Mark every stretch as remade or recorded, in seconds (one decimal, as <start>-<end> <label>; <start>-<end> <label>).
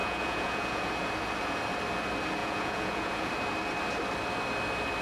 0.0-0.9 remade; 0.9-2.4 recorded; 2.4-3.3 remade; 3.3-5.0 recorded